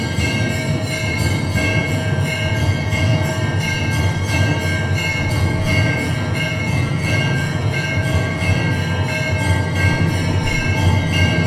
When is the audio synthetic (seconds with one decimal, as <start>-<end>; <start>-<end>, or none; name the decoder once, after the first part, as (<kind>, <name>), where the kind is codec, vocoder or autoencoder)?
1.8-3.3 (vocoder, Vocos); 5.1-8.6